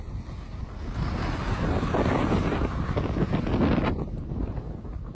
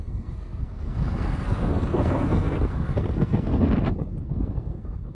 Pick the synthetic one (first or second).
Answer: second